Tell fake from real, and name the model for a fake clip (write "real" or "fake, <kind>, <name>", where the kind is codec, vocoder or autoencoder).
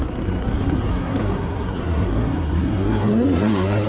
fake, codec, SNAC